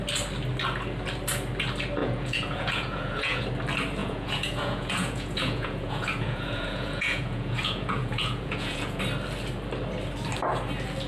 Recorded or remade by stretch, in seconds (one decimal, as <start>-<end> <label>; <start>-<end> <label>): 0.0-2.0 recorded; 2.0-3.4 remade; 3.4-4.0 recorded; 4.0-9.0 remade; 9.0-11.1 recorded